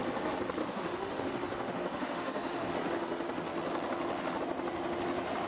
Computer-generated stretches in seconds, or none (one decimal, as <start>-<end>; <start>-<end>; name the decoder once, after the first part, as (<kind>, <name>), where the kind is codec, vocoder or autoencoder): 0.6-2.7 (autoencoder, DAC-VAE)